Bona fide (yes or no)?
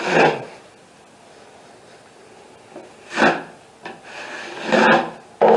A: yes